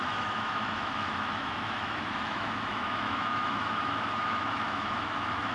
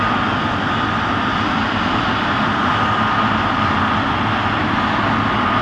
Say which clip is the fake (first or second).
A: first